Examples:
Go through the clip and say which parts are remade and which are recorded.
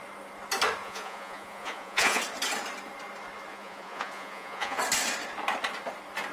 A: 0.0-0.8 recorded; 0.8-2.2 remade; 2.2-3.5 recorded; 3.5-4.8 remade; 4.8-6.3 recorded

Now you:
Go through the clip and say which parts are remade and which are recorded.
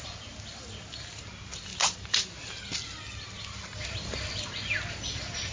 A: 0.0-5.5 recorded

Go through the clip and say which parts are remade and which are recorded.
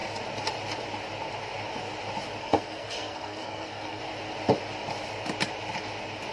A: 0.0-2.4 recorded; 2.4-4.0 remade; 4.0-6.3 recorded